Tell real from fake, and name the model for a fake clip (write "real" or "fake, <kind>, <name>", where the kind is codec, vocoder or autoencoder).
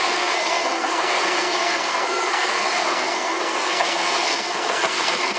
fake, codec, SNAC